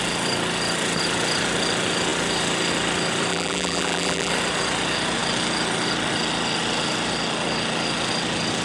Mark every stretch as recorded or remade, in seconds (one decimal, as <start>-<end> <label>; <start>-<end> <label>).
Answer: 0.0-3.3 recorded; 3.3-4.3 remade; 4.3-8.6 recorded